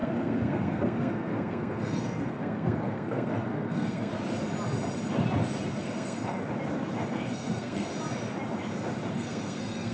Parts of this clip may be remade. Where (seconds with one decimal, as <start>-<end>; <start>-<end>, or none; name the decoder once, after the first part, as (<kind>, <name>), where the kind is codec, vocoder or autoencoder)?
0.0-4.1 (codec, SNAC); 5.8-6.4; 7.1-7.9; 9.1-9.9